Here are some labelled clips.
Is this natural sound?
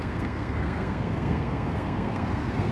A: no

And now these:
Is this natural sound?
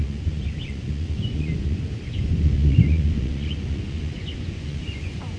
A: no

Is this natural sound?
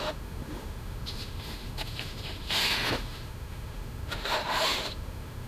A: no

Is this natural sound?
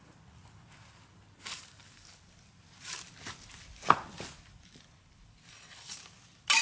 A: yes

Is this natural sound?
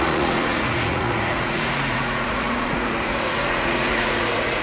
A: no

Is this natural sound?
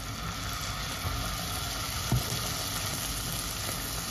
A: yes